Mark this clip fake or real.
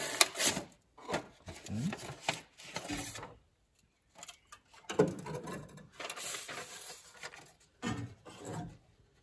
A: real